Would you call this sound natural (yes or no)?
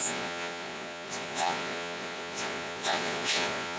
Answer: no